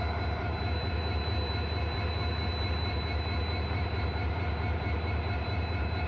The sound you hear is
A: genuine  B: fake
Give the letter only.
B